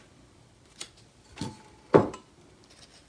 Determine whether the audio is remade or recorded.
remade